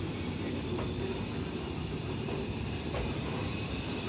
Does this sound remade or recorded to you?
recorded